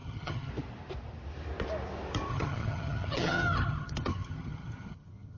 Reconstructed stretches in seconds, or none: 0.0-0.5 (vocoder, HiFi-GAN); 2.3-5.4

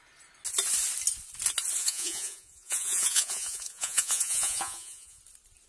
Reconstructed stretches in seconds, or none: 1.8-5.2 (vocoder, Vocos)